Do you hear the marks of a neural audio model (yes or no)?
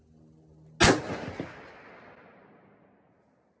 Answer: no